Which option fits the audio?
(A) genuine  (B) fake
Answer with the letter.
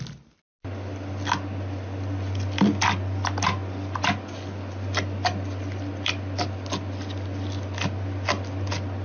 A